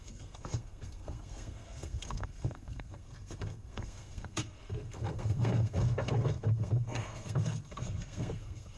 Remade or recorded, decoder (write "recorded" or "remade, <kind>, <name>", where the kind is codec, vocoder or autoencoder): remade, codec, SNAC